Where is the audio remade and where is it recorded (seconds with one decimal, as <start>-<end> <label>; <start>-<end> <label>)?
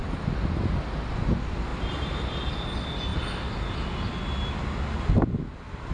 0.0-1.7 recorded; 1.7-2.5 remade; 2.5-5.9 recorded